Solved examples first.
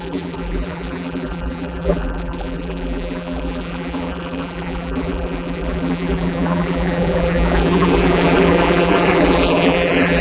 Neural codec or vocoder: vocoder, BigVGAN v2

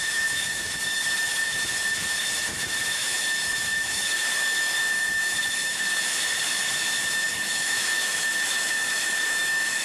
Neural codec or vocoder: autoencoder, DAC-VAE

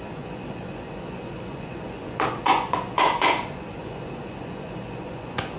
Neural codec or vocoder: vocoder, Vocos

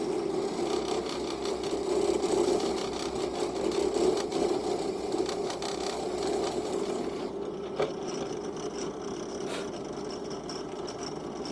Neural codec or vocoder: none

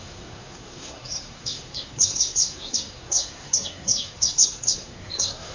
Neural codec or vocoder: codec, SNAC